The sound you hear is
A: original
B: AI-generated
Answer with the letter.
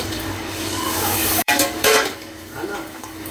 B